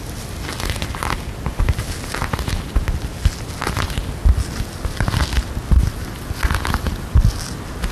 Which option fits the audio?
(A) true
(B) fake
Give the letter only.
A